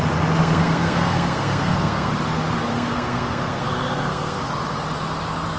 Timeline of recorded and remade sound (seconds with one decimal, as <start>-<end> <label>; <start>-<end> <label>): 0.0-0.4 recorded; 0.4-2.1 remade; 2.1-2.7 recorded; 2.7-4.4 remade; 4.4-5.6 recorded